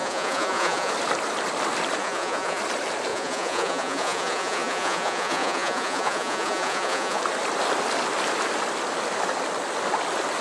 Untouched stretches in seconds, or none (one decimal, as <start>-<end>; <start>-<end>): 0.9-2.0; 2.6-3.1; 7.2-10.4